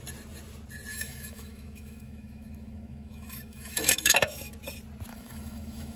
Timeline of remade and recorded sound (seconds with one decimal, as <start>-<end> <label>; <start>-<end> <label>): 0.0-0.9 recorded; 0.9-4.5 remade; 4.5-5.1 recorded; 5.1-6.0 remade